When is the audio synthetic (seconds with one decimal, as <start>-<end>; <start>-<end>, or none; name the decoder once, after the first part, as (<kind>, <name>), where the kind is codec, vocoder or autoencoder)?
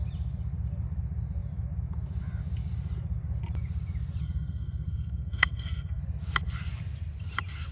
4.2-6.0 (codec, SNAC)